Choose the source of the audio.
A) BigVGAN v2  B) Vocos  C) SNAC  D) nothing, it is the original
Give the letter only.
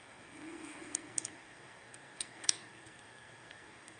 C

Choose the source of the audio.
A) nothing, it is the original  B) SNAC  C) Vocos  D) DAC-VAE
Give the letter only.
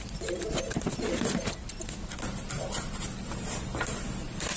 A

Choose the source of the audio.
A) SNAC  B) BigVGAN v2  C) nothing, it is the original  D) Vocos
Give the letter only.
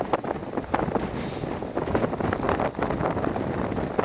C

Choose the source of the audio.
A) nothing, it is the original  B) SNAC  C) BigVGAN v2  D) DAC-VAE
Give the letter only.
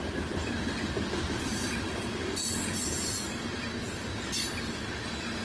A